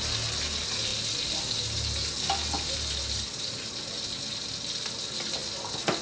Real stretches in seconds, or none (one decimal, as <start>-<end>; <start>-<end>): 0.0-6.0